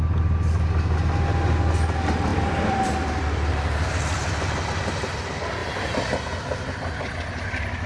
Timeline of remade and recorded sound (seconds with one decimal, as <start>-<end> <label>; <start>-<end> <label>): 0.0-2.3 recorded; 2.3-3.9 remade; 3.9-5.6 recorded; 5.6-7.1 remade; 7.1-7.9 recorded